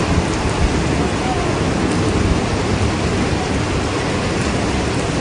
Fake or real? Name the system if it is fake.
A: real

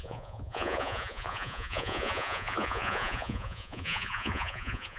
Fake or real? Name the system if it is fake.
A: fake, vocoder, Vocos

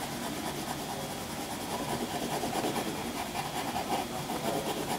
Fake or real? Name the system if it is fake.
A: real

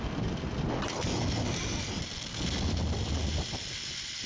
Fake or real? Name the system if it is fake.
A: real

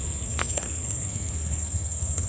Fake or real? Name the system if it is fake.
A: fake, codec, SNAC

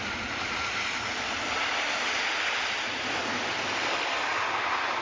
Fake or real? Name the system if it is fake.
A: real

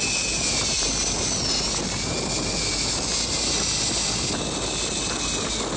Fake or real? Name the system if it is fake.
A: real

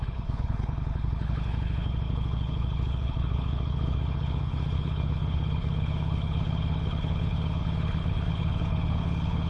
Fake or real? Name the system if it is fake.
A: fake, codec, HILCodec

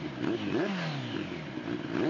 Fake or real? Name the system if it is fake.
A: real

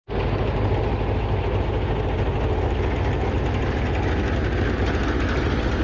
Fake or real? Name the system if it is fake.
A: real